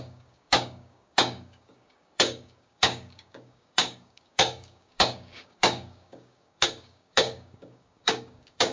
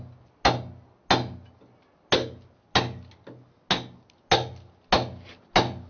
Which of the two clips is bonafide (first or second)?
second